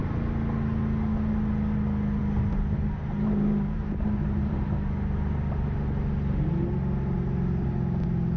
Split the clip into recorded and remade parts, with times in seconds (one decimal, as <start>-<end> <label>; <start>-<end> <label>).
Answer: 0.0-8.4 recorded